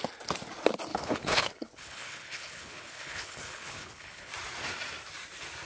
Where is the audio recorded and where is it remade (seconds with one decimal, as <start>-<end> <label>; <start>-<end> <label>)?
0.0-0.9 recorded; 0.9-4.3 remade; 4.3-5.7 recorded